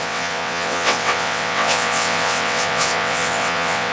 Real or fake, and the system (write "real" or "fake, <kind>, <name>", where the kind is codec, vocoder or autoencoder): fake, vocoder, WaveNeXt